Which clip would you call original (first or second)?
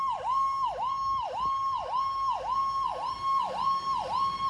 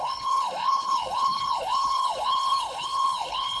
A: first